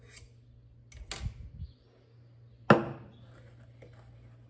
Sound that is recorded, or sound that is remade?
recorded